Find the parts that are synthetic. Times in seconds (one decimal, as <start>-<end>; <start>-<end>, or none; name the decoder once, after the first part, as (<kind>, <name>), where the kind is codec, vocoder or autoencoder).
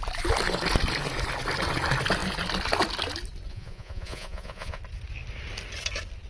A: 3.5-4.8 (vocoder, Vocos)